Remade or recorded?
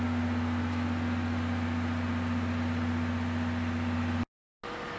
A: recorded